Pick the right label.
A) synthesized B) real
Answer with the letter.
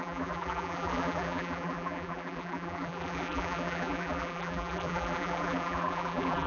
A